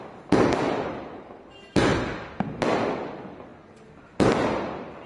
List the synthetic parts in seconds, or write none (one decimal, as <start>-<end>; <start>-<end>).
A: none